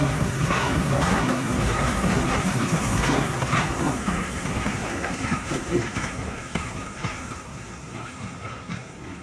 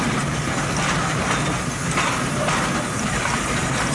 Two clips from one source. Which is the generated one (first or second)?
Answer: first